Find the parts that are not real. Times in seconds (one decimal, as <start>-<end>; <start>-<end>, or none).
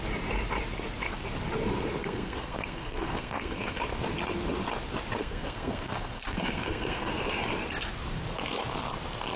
2.0-3.8; 5.2-7.1